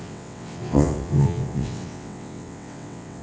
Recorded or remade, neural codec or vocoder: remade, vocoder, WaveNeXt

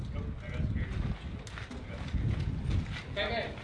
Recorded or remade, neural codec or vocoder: recorded